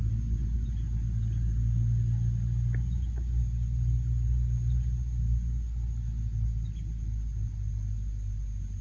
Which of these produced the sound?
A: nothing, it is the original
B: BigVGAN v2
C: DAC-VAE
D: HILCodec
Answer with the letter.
A